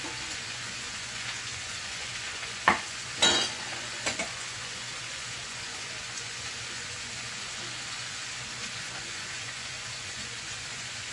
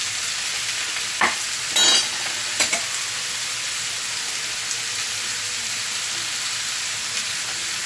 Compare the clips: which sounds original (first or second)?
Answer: second